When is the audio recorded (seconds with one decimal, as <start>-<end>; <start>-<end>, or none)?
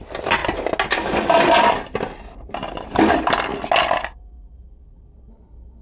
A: 0.0-5.8